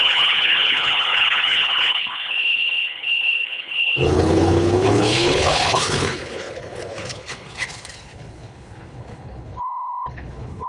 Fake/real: fake